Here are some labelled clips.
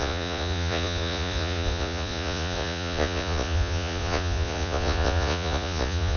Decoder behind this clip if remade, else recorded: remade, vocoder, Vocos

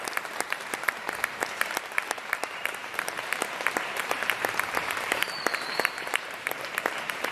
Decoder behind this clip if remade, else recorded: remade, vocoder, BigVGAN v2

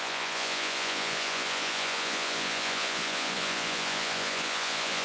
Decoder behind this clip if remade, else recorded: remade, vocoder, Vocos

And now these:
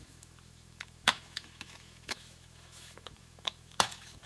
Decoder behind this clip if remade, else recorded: remade, autoencoder, DAC-VAE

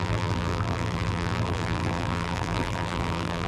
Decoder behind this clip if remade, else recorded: remade, vocoder, BigVGAN v2